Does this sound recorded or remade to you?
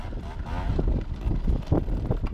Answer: recorded